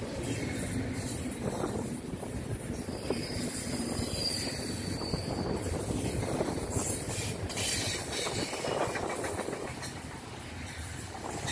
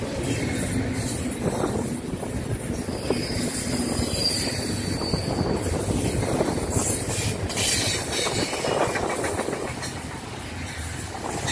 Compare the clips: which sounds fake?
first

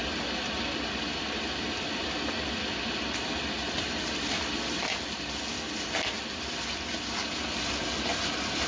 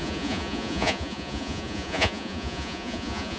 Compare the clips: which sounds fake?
second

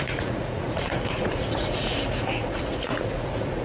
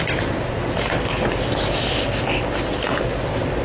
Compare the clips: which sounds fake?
first